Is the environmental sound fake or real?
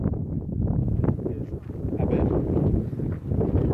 real